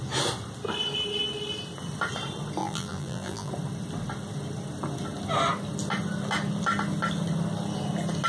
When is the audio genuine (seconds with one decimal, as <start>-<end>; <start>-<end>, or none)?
0.0-2.6; 3.5-8.3